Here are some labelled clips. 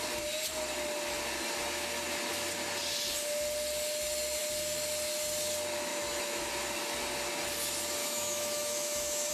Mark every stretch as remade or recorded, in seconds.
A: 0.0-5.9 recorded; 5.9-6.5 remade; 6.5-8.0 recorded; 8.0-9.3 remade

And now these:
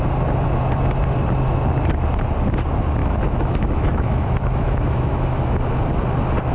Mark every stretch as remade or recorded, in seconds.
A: 0.0-3.0 recorded; 3.0-5.6 remade; 5.6-6.5 recorded

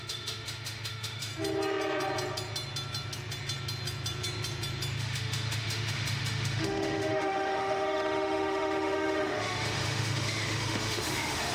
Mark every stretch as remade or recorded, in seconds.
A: 0.0-1.3 remade; 1.3-5.0 recorded; 5.0-11.5 remade